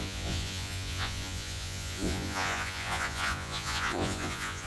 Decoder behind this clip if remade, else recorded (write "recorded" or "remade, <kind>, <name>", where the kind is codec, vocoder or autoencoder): remade, vocoder, Vocos